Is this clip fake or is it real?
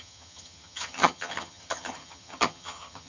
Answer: fake